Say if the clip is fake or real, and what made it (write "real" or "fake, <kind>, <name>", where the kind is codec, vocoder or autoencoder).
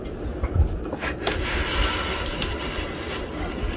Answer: real